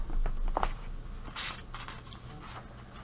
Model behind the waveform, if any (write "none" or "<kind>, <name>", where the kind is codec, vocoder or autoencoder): none